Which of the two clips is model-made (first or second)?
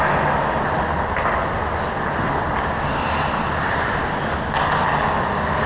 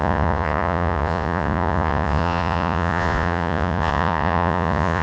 second